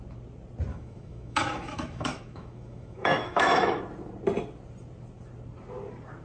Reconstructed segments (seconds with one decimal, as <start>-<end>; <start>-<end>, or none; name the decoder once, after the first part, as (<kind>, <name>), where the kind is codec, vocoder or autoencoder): 0.7-3.8 (autoencoder, DAC-VAE)